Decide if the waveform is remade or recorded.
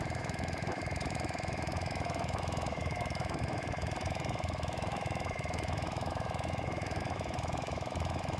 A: remade